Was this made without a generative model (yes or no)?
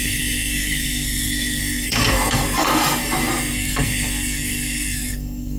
no